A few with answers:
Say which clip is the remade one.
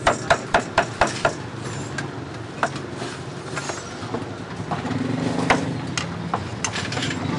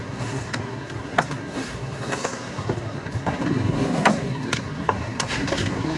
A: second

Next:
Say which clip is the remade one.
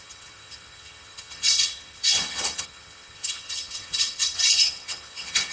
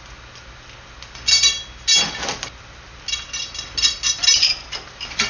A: first